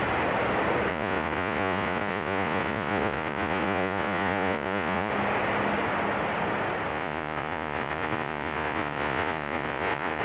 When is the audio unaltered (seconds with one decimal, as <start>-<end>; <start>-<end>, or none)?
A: 0.0-0.9; 5.1-6.9